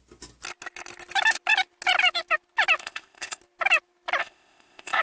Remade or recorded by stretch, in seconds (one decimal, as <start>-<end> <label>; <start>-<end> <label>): 0.0-2.8 recorded; 2.8-3.4 remade; 3.4-4.2 recorded; 4.2-5.0 remade